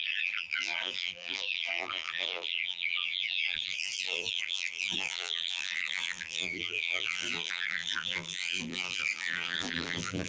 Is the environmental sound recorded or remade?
remade